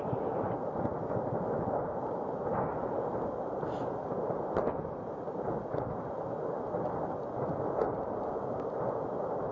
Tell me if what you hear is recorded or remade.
recorded